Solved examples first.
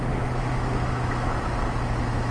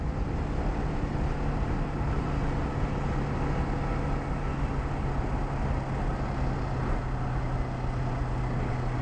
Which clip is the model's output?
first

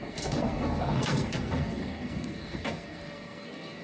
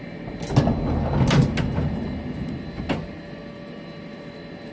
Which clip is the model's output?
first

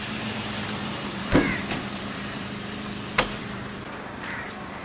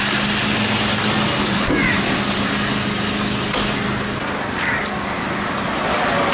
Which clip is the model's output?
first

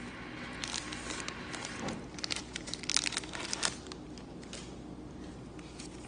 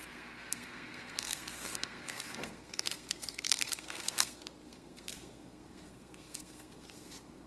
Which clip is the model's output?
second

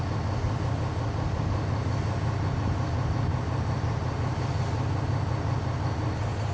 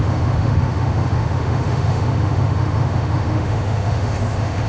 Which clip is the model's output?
second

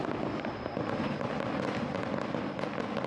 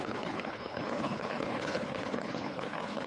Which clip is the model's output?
second